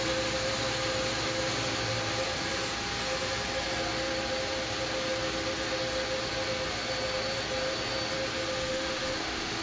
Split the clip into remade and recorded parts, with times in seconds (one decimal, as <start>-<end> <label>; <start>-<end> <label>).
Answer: 0.0-8.5 recorded; 8.5-9.6 remade